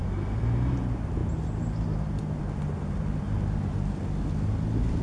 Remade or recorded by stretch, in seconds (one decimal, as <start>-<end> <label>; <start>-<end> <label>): 0.0-5.0 recorded